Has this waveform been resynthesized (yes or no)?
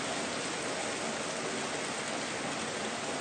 no